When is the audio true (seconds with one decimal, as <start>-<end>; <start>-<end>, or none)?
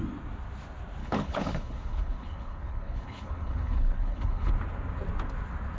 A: 0.0-1.0; 4.5-5.8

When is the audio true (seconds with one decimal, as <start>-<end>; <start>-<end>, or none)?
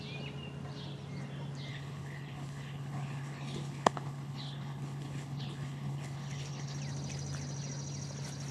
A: 0.0-1.7; 6.8-8.5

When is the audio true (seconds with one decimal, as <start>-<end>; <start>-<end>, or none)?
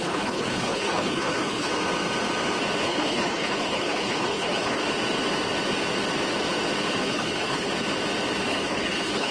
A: 1.7-2.8; 4.8-7.0; 7.7-8.5